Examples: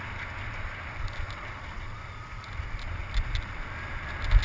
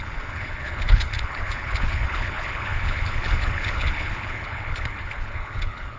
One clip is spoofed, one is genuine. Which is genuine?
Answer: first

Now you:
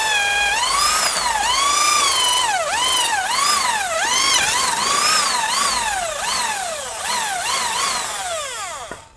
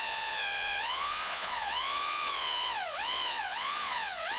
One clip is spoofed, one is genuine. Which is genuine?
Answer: first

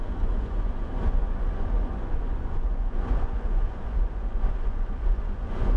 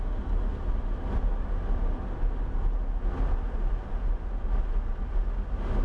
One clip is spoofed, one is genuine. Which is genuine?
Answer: second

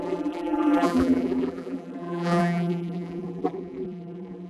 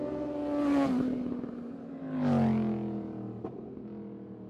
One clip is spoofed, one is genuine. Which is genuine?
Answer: second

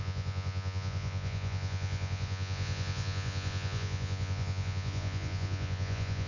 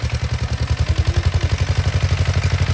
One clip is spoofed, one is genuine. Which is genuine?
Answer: second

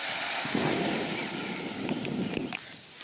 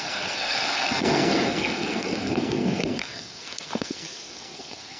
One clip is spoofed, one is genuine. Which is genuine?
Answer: first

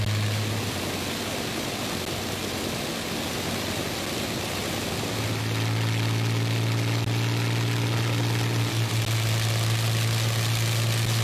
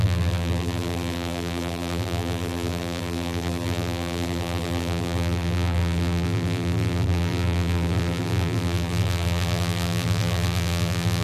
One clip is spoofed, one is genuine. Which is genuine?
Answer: first